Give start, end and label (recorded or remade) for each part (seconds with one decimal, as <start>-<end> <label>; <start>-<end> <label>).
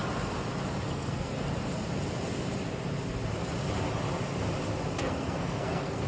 0.0-0.9 recorded; 0.9-1.3 remade; 1.3-5.0 recorded; 5.0-6.1 remade